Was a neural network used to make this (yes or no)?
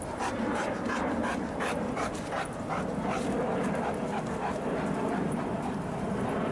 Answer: no